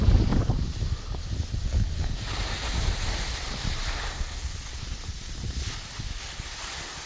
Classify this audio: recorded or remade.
recorded